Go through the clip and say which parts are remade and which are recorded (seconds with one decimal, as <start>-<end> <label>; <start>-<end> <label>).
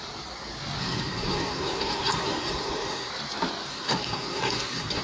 0.0-0.8 recorded; 0.8-3.1 remade; 3.1-3.7 recorded; 3.7-5.0 remade